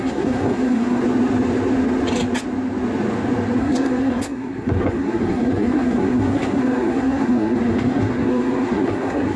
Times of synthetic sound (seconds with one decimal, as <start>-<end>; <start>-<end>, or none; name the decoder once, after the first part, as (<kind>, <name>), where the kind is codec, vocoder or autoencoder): 0.0-1.0 (codec, SNAC); 3.6-9.4